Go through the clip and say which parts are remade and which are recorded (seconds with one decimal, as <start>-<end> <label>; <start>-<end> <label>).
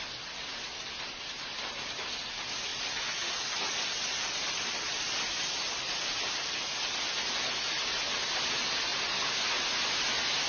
0.0-2.7 recorded; 2.7-6.7 remade; 6.7-10.5 recorded